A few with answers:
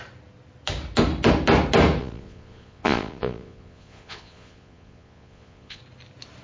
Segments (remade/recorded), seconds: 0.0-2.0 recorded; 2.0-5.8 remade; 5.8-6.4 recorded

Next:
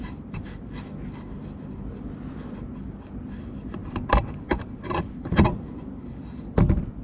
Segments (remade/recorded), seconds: 0.0-3.8 recorded; 3.8-5.3 remade; 5.3-7.0 recorded

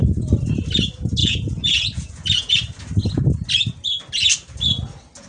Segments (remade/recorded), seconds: 0.0-1.2 recorded; 1.2-2.5 remade; 2.5-5.3 recorded

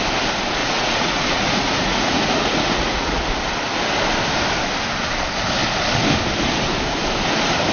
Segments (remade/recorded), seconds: 0.0-0.6 recorded; 0.6-3.2 remade; 3.2-7.7 recorded